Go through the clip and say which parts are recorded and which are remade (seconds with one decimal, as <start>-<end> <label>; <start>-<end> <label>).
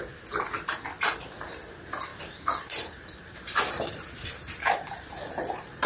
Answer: 0.0-2.1 recorded; 2.1-5.9 remade